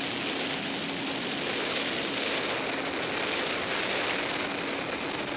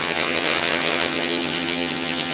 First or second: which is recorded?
first